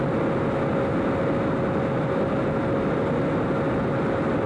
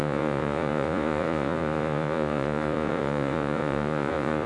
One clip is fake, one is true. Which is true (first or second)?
first